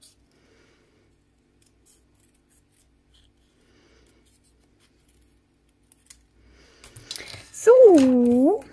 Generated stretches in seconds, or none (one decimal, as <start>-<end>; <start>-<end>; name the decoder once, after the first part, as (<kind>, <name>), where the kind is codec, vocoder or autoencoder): 7.3-7.9 (codec, SNAC)